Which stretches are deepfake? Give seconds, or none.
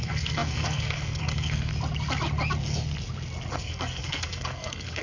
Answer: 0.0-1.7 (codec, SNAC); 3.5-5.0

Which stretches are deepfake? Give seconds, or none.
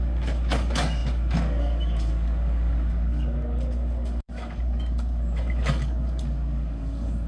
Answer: 0.0-7.3 (codec, DAC)